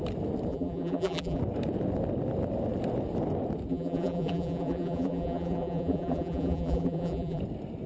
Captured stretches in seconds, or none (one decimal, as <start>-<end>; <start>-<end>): 0.0-0.5; 1.4-3.7; 7.4-7.9

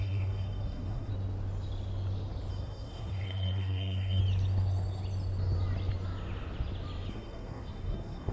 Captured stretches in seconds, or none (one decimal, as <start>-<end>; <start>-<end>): 1.1-2.5; 4.2-7.1

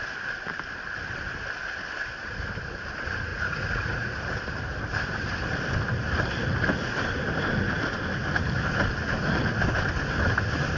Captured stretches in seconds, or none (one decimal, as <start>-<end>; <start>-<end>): 0.0-3.3; 4.1-10.8

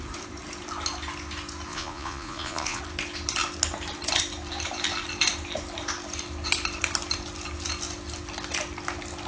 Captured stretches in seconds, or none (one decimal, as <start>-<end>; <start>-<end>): 0.0-1.7; 2.8-9.3

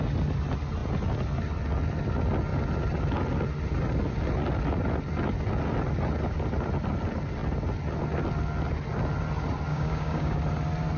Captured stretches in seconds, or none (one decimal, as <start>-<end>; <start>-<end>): 0.0-9.7; 10.4-11.0